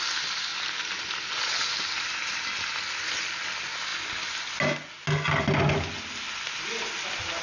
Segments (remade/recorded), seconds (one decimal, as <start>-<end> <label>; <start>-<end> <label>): 0.0-7.4 recorded